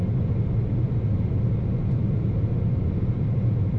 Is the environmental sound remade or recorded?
recorded